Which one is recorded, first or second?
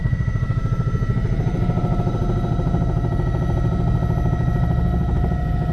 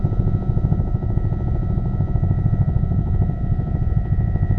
first